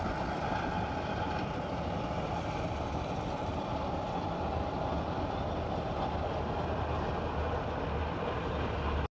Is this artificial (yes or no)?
no